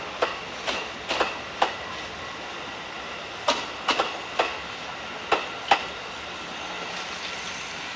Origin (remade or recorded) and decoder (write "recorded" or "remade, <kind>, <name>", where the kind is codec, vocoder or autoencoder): recorded